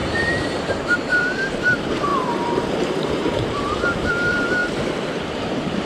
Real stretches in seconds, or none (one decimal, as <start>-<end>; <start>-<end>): 4.6-5.5